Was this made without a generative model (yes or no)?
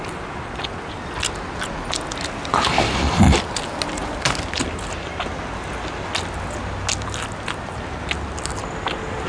yes